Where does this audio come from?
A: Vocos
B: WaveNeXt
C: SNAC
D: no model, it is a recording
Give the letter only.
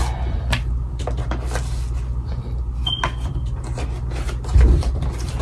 D